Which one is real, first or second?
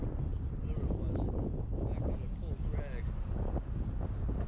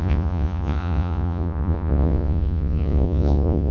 first